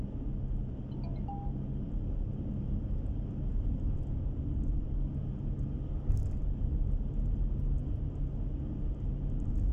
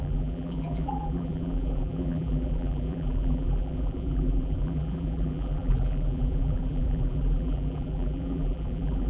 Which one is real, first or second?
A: first